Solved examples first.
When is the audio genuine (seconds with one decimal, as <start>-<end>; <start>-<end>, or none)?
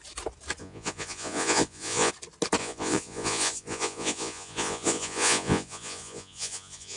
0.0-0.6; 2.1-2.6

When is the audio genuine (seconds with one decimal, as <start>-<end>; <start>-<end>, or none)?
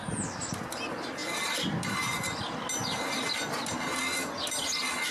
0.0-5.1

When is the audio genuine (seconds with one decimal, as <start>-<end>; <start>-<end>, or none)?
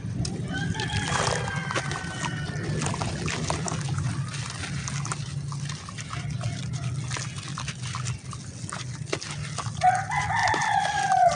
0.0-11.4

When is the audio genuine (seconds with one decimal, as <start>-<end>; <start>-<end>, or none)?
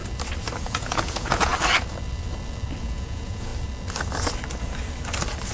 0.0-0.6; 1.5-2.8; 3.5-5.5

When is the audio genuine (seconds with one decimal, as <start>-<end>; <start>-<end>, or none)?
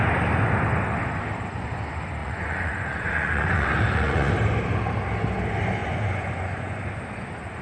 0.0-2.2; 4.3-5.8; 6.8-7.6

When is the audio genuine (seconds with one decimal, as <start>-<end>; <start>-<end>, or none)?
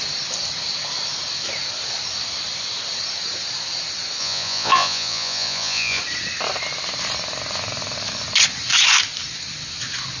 0.0-4.2; 6.0-10.2